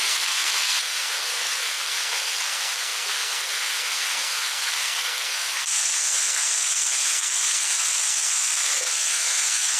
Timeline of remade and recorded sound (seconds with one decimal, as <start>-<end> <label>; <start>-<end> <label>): 0.0-9.8 remade